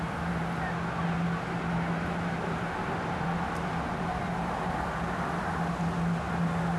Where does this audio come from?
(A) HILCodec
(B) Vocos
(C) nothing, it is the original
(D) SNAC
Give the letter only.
C